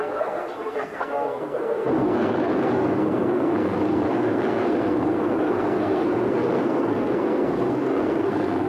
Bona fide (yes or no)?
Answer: no